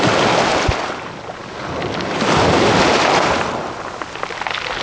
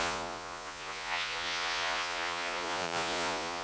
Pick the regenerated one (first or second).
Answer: second